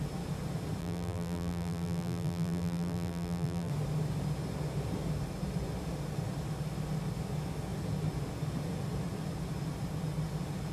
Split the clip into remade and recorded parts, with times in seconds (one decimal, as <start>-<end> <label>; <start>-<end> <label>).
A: 0.0-0.8 recorded; 0.8-3.7 remade; 3.7-10.7 recorded

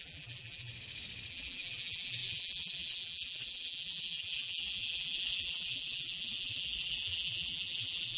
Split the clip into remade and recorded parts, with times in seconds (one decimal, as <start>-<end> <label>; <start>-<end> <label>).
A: 0.0-0.7 remade; 0.7-1.3 recorded; 1.3-8.2 remade

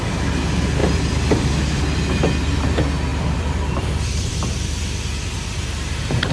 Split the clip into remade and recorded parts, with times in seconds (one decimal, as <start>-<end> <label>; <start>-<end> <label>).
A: 0.0-0.8 recorded; 0.8-1.8 remade; 1.8-3.1 recorded; 3.1-4.7 remade; 4.7-6.3 recorded

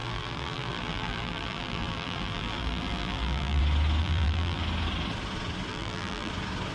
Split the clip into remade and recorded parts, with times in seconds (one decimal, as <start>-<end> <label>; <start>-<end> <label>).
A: 0.0-3.6 remade; 3.6-4.0 recorded; 4.0-4.6 remade; 4.6-5.7 recorded; 5.7-6.3 remade; 6.3-6.7 recorded

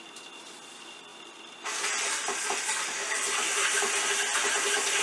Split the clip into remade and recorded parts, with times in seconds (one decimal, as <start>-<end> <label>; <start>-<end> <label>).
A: 0.0-1.1 recorded; 1.1-4.1 remade; 4.1-5.0 recorded

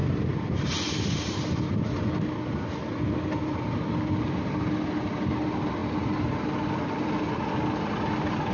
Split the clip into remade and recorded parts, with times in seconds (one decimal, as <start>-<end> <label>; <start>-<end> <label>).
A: 0.0-8.5 recorded

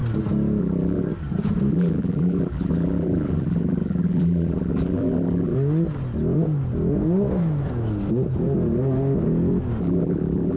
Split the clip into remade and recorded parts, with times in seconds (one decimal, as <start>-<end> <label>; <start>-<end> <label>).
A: 0.0-0.6 recorded; 0.6-1.1 remade; 1.1-1.7 recorded; 1.7-5.5 remade; 5.5-9.8 recorded; 9.8-10.6 remade

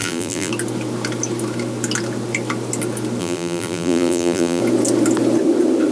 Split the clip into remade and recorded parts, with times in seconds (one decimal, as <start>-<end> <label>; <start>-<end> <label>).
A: 0.0-0.5 remade; 0.5-3.2 recorded; 3.2-4.6 remade; 4.6-5.9 recorded